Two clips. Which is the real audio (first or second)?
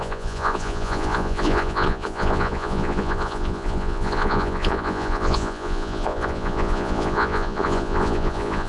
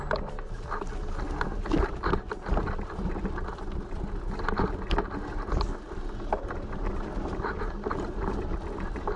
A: second